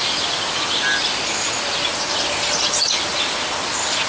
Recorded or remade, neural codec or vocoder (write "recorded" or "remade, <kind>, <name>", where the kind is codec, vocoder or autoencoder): recorded